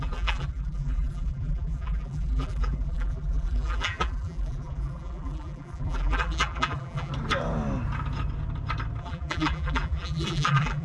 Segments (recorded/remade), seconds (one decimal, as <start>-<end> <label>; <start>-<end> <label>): 0.0-7.1 remade; 7.1-9.0 recorded; 9.0-10.8 remade